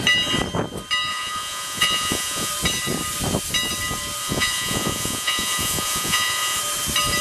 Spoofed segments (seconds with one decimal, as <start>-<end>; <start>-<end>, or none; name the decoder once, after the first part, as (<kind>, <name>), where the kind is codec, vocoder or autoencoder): 1.1-2.5 (vocoder, Vocos); 4.2-6.6